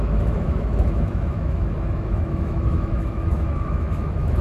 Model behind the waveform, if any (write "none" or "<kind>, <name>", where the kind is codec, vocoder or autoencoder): autoencoder, DAC-VAE